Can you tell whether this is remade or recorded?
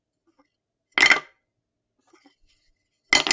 recorded